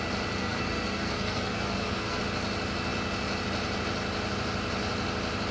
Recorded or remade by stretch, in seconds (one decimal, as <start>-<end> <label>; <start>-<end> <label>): 0.0-0.4 recorded; 0.4-2.2 remade; 2.2-5.5 recorded